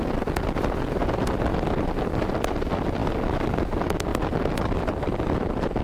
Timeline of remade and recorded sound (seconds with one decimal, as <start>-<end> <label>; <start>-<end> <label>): 0.0-4.1 remade; 4.1-4.6 recorded; 4.6-5.8 remade